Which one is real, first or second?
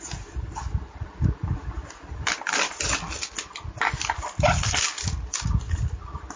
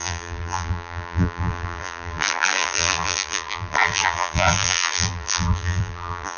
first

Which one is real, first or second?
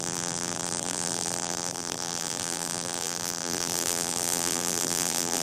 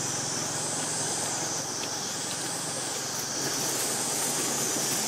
second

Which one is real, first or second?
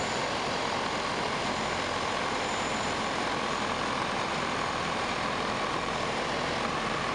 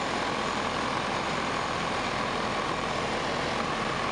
second